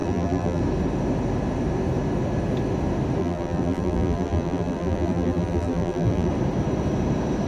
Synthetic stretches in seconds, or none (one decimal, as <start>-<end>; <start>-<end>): 0.0-0.6; 3.2-6.3